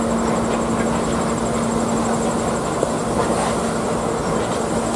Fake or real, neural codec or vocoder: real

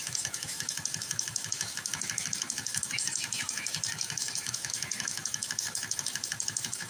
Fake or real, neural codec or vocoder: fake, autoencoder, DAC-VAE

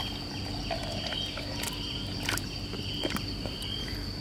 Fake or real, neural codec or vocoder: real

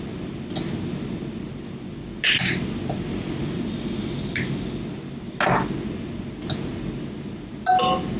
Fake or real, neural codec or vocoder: real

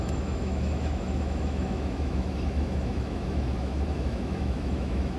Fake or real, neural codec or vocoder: fake, autoencoder, DAC-VAE